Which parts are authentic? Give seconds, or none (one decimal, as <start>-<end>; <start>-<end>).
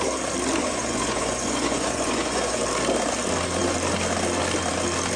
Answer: 0.0-0.6; 2.6-5.2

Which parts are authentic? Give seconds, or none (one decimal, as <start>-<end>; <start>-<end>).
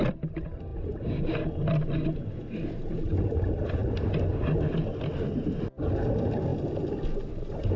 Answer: 0.0-7.8